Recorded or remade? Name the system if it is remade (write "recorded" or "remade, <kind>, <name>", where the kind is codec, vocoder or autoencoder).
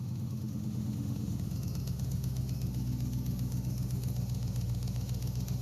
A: remade, autoencoder, DAC-VAE